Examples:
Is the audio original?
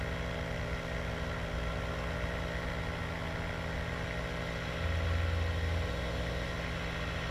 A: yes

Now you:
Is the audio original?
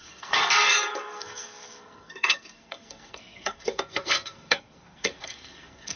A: no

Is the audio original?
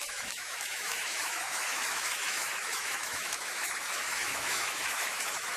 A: no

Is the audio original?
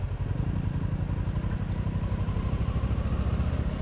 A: yes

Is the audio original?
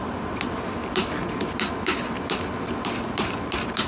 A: yes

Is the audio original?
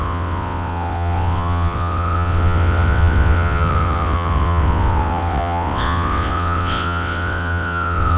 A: no